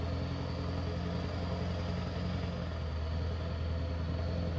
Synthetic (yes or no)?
no